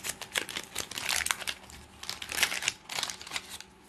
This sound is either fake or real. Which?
real